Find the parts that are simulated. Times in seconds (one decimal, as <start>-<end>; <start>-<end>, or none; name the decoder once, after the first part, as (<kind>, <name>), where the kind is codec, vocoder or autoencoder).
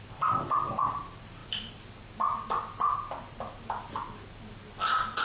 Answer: none